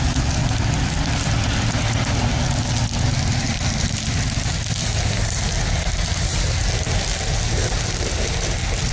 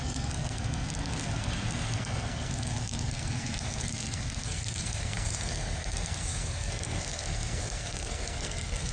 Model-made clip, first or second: second